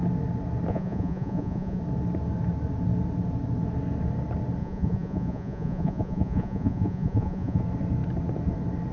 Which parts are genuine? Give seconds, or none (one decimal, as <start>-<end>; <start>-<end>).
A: 0.0-0.7; 1.8-4.6; 7.6-8.9